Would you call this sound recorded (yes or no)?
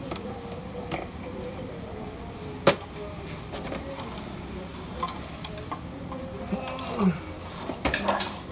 yes